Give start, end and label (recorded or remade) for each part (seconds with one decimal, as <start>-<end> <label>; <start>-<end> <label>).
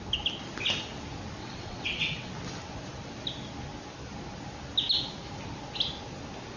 0.0-1.4 recorded; 1.4-2.3 remade; 2.3-6.6 recorded